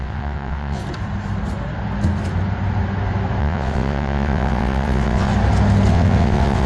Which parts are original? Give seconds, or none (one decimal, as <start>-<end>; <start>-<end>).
0.8-3.4; 5.3-5.9